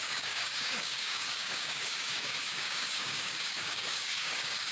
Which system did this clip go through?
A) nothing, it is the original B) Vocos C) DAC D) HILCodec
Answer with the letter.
C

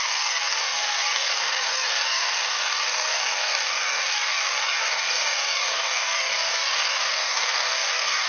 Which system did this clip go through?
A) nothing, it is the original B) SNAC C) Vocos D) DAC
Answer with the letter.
D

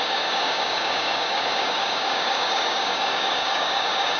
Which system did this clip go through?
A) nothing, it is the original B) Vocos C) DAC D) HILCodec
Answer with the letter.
C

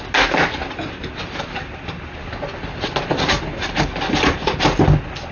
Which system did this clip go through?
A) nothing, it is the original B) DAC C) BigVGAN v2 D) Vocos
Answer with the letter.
A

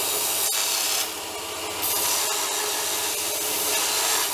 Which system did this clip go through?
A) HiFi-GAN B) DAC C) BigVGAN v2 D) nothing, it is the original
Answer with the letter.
D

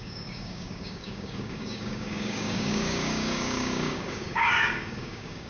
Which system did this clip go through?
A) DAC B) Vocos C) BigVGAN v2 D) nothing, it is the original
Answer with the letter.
A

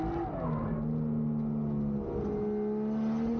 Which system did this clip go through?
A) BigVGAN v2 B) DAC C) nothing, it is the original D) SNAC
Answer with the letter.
C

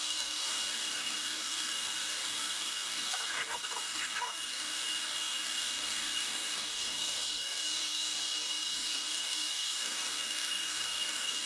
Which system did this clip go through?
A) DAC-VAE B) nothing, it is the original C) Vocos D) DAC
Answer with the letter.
D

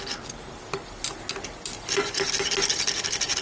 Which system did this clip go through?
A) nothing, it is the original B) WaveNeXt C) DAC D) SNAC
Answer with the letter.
A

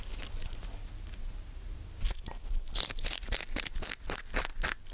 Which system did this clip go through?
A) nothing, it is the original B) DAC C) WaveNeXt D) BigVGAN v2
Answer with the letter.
A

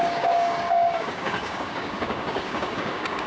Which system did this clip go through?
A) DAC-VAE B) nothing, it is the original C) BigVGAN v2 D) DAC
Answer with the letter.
D